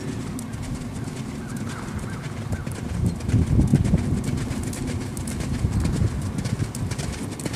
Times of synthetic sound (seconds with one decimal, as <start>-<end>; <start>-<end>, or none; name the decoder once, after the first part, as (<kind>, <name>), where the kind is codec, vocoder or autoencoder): none